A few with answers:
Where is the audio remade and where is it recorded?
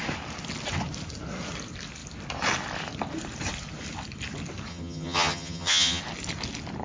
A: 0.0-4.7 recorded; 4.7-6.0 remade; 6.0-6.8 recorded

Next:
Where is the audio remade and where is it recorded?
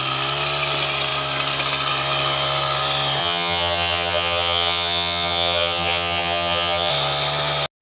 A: 0.0-3.2 recorded; 3.2-6.9 remade; 6.9-7.8 recorded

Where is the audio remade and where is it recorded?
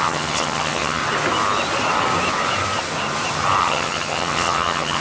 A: 0.0-1.0 remade; 1.0-3.6 recorded; 3.6-5.0 remade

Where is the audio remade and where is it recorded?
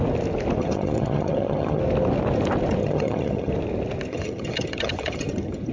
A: 0.0-0.6 recorded; 0.6-1.8 remade; 1.8-2.8 recorded; 2.8-3.5 remade; 3.5-4.1 recorded; 4.1-5.7 remade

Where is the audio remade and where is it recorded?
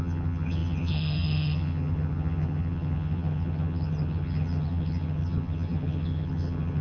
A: 0.0-6.8 remade